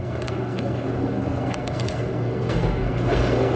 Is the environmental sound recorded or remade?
remade